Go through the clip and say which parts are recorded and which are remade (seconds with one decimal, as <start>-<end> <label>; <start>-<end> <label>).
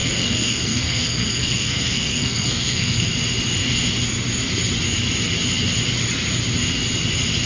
0.0-3.1 remade; 3.1-7.5 recorded